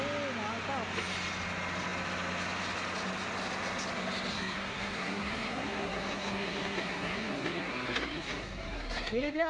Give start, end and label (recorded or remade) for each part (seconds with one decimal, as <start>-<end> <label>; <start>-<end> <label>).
0.0-4.3 recorded; 4.3-9.5 remade

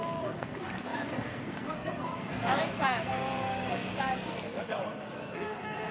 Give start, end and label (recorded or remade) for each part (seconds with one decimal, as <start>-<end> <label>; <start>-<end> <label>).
0.0-5.9 remade

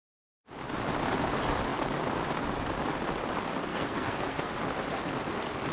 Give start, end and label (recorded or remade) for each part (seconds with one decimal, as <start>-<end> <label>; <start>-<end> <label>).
0.0-3.7 recorded; 3.7-4.5 remade; 4.5-5.7 recorded

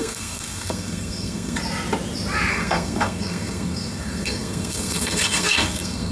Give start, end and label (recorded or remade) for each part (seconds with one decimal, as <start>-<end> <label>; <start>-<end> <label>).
0.0-1.6 remade; 1.6-2.5 recorded; 2.5-6.1 remade

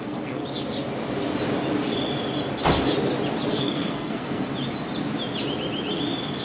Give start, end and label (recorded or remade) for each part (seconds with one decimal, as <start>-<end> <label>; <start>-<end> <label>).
0.0-0.4 remade; 0.4-3.5 recorded; 3.5-4.5 remade; 4.5-6.4 recorded

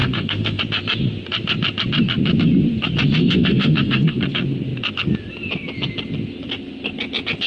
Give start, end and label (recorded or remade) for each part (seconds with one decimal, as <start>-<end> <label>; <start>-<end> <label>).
0.0-0.6 remade; 0.6-3.2 recorded; 3.2-4.2 remade; 4.2-7.5 recorded

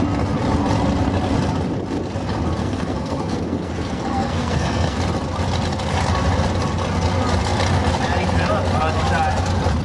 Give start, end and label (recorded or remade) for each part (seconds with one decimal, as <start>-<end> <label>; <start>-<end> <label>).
0.0-2.6 recorded; 2.6-5.0 remade; 5.0-9.8 recorded